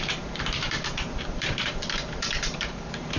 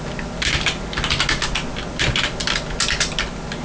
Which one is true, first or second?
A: second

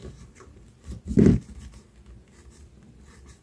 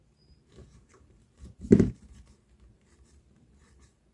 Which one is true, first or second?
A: first